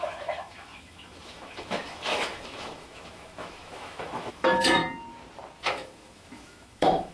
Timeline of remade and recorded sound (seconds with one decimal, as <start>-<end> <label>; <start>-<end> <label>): 0.0-4.8 remade; 4.8-5.6 recorded; 5.6-7.1 remade